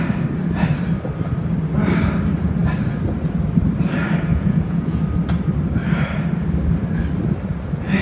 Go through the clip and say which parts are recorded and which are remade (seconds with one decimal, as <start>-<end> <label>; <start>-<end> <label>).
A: 0.0-4.3 recorded; 4.3-5.0 remade; 5.0-8.0 recorded

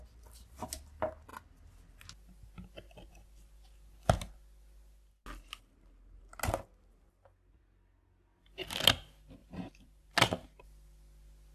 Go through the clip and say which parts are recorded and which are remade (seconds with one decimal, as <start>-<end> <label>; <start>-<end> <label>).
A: 0.0-9.4 recorded; 9.4-10.1 remade; 10.1-11.5 recorded